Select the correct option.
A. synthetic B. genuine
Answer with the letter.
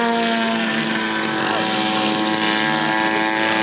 B